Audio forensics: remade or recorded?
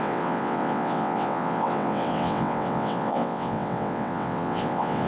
remade